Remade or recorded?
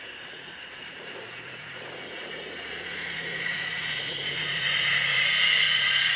remade